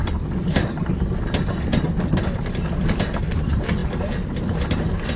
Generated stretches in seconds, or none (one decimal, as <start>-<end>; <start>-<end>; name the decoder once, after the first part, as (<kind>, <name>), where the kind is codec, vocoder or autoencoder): none